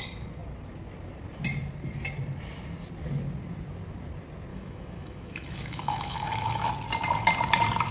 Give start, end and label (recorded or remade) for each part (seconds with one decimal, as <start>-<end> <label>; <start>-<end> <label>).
0.0-4.5 recorded; 4.5-6.7 remade; 6.7-7.9 recorded